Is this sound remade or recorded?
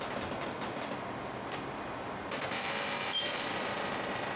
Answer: recorded